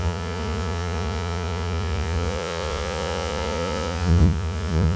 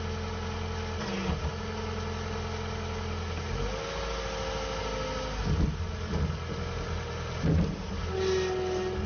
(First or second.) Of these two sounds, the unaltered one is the second